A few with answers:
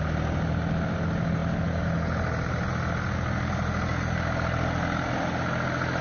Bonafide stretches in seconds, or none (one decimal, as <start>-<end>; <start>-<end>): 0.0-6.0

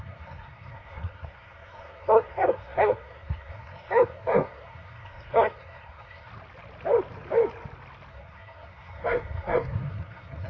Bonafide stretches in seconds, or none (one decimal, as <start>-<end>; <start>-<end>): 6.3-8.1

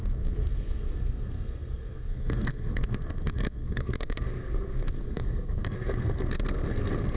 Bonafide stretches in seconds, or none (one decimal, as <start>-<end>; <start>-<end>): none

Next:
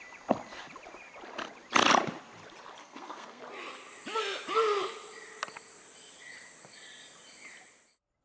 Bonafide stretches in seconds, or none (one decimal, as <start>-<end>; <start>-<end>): 0.0-2.8; 3.4-8.2

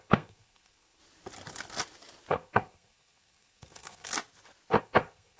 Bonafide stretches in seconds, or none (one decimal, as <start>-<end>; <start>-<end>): 1.0-2.3; 4.1-4.8

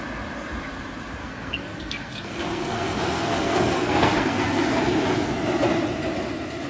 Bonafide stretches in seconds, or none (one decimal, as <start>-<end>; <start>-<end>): 0.0-1.2; 4.8-6.7

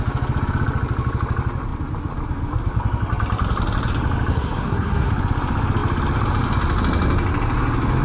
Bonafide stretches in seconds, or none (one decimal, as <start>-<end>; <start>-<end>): 0.0-4.3; 5.1-8.0

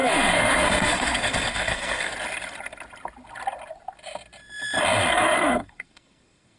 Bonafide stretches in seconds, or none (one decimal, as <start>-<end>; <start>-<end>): 2.1-5.1